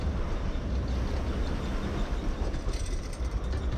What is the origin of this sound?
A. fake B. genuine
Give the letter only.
B